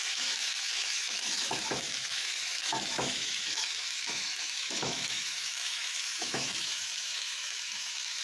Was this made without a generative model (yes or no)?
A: no